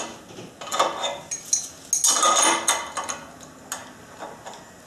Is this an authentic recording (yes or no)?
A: yes